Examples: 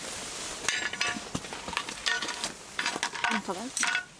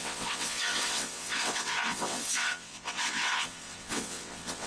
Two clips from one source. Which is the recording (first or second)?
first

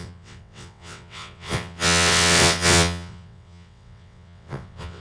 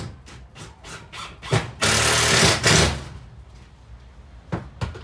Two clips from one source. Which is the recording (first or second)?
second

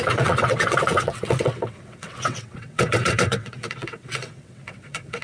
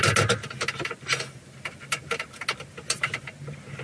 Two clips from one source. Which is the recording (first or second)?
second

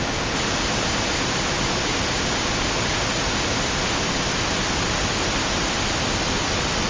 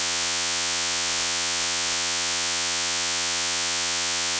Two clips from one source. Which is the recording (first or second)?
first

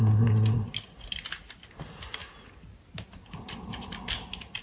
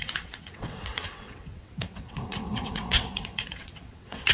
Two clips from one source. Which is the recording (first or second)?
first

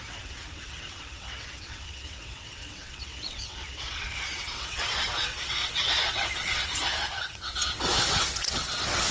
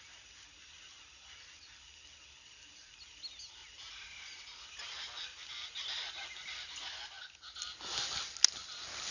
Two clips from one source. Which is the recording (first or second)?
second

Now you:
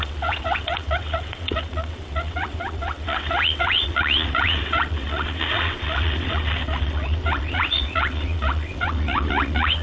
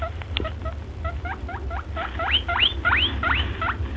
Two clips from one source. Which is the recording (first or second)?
second